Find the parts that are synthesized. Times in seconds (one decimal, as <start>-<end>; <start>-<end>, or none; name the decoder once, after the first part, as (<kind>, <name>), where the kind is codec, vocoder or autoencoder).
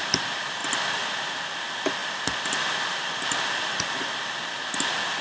0.6-1.1 (vocoder, BigVGAN v2)